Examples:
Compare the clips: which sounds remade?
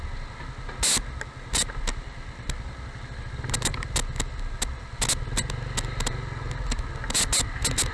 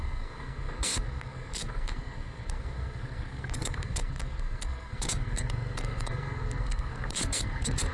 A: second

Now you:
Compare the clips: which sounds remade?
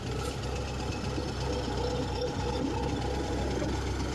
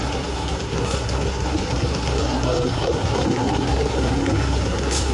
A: second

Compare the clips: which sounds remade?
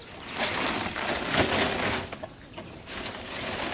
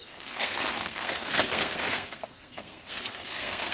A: second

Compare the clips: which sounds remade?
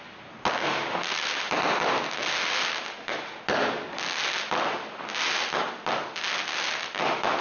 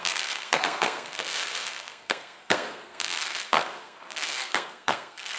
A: second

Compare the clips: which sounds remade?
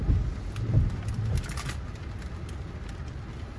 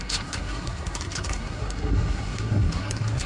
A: second